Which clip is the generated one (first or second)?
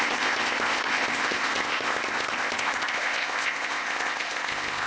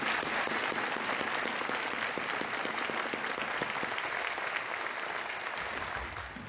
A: first